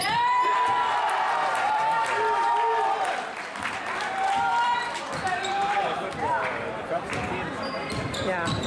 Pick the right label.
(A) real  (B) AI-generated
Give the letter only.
B